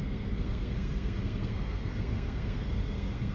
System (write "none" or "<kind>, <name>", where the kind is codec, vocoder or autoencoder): codec, SNAC